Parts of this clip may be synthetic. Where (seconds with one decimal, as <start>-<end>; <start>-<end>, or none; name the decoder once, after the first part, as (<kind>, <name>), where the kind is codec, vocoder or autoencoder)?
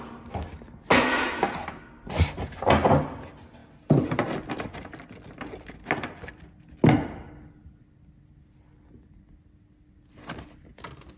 none